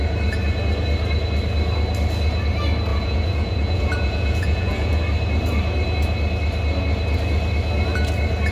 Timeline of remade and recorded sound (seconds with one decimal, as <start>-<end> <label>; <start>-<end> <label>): 0.0-2.9 recorded; 2.9-5.0 remade; 5.0-8.5 recorded